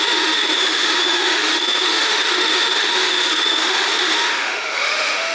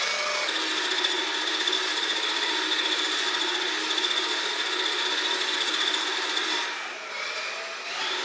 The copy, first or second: first